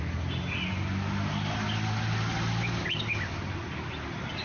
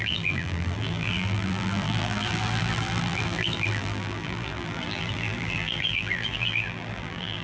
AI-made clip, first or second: second